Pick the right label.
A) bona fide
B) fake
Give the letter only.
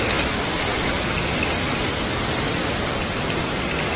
A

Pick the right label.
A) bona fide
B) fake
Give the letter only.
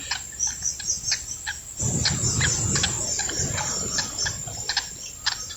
A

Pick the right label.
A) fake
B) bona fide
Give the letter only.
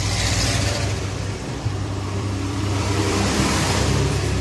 A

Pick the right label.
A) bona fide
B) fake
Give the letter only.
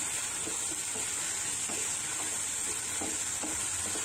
A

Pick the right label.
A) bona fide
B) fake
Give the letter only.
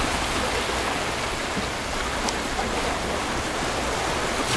B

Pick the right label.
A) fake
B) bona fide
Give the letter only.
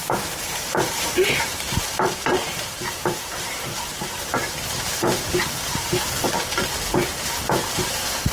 A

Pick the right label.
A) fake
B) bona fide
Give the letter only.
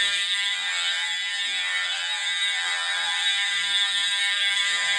A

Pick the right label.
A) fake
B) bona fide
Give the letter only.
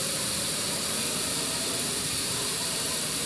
A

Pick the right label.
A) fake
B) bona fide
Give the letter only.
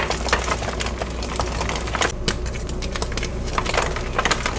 B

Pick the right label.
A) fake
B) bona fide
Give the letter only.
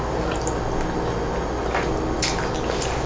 B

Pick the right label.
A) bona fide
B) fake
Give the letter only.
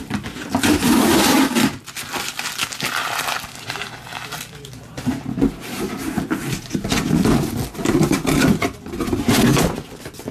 A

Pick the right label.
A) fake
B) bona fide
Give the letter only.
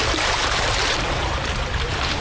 A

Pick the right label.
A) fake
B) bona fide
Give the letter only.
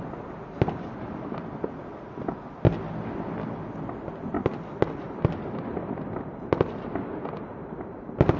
B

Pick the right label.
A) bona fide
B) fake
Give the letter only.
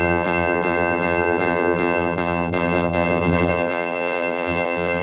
B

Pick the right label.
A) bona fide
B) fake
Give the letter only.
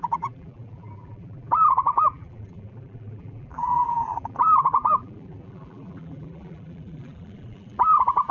B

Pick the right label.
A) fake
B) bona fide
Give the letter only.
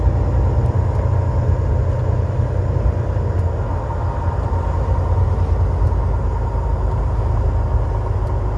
B